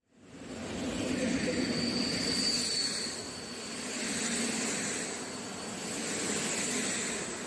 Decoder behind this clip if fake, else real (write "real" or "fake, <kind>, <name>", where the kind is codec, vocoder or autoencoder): real